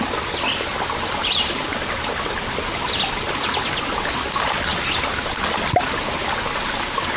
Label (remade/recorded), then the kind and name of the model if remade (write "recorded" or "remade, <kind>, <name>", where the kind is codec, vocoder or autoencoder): recorded